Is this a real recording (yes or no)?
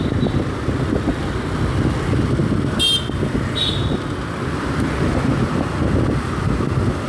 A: yes